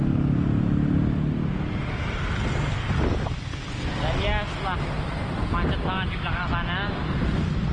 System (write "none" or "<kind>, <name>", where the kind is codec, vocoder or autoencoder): none